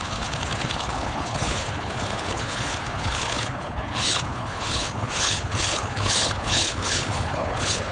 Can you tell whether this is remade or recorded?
remade